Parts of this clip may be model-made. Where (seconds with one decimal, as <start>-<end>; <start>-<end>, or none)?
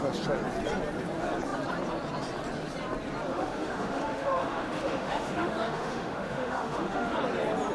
3.3-7.2